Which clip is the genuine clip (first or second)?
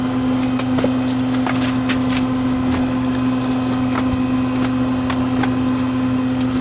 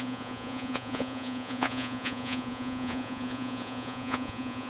first